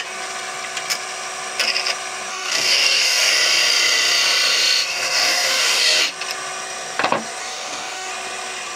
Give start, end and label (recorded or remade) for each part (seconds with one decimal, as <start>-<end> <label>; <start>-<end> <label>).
0.0-2.3 recorded; 2.3-3.3 remade; 3.3-4.9 recorded; 4.9-6.0 remade; 6.0-7.4 recorded; 7.4-8.1 remade; 8.1-8.8 recorded